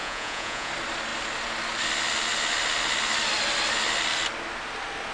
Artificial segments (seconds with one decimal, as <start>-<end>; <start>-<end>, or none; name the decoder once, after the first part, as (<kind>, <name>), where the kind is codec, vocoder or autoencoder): 0.0-0.7 (vocoder, Vocos)

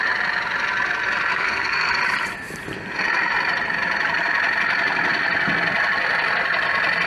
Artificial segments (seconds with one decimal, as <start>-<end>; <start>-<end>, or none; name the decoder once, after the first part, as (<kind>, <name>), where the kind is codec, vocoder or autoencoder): 1.3-1.9 (codec, SNAC)

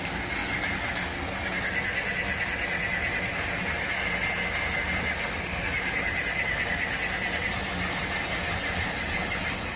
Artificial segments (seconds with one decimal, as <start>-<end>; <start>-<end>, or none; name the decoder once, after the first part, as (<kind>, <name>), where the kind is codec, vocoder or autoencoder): none

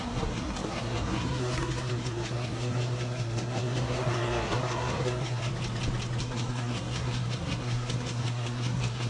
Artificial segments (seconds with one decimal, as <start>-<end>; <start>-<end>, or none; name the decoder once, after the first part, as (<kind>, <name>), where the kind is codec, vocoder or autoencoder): 0.0-5.5 (codec, SNAC); 6.2-9.1

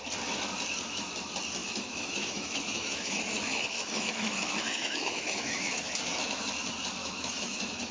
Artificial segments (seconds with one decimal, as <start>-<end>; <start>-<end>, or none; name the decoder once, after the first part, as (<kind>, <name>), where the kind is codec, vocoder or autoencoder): 1.6-5.9 (autoencoder, DAC-VAE); 7.0-7.9

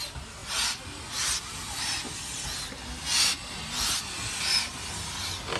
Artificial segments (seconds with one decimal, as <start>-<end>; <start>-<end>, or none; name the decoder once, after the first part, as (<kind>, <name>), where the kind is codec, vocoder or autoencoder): none

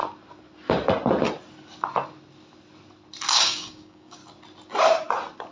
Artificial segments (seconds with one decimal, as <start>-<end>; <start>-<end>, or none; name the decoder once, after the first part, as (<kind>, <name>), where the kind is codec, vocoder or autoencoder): 3.3-4.2 (codec, DAC)